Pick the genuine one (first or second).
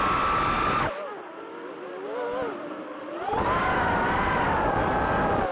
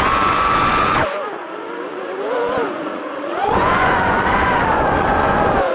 first